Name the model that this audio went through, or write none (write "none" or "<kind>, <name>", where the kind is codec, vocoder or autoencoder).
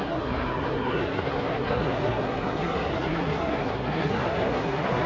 codec, SNAC